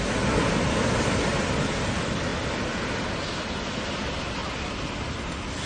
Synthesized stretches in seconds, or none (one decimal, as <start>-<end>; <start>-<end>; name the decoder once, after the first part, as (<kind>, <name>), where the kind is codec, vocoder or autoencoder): 4.4-5.1 (vocoder, BigVGAN v2)